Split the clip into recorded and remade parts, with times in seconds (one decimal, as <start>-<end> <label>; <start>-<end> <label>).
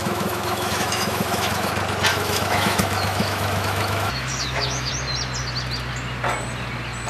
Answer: 0.0-1.7 remade; 1.7-2.1 recorded; 2.1-4.9 remade; 4.9-7.1 recorded